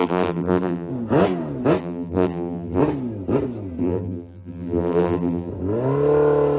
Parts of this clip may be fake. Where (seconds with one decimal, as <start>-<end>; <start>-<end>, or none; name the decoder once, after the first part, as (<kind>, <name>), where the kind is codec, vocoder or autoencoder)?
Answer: 0.0-0.9 (vocoder, BigVGAN v2); 1.8-2.8; 3.8-5.5